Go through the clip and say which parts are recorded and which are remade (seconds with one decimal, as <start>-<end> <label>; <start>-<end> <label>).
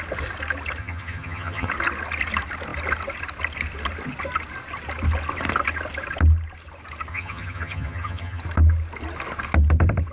0.0-0.8 recorded; 0.8-1.7 remade; 1.7-7.1 recorded; 7.1-8.4 remade; 8.4-10.1 recorded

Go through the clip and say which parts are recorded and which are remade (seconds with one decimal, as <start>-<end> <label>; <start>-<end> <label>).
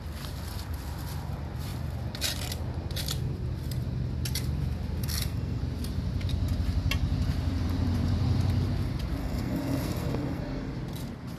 0.0-5.0 recorded; 5.0-5.6 remade; 5.6-9.2 recorded; 9.2-10.7 remade; 10.7-11.4 recorded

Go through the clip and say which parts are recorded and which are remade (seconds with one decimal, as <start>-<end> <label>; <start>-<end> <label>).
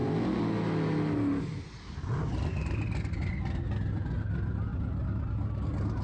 0.0-6.0 recorded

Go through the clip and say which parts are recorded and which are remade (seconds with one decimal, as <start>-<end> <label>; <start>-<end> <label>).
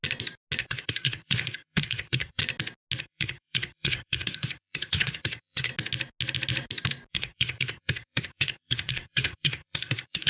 0.0-0.6 recorded; 0.6-2.4 remade; 2.4-3.0 recorded; 3.0-5.7 remade; 5.7-7.1 recorded; 7.1-10.3 remade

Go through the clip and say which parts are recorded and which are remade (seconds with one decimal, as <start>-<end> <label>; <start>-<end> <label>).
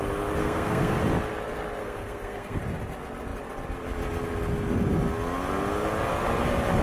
0.0-0.4 recorded; 0.4-1.0 remade; 1.0-1.8 recorded; 1.8-2.6 remade; 2.6-6.8 recorded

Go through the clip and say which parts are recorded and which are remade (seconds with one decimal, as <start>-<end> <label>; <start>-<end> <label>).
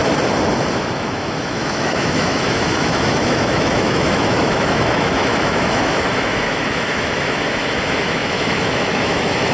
0.0-0.7 recorded; 0.7-9.5 remade